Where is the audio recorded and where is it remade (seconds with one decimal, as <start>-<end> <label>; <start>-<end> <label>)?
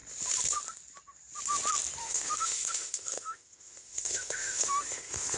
0.0-2.0 recorded; 2.0-5.4 remade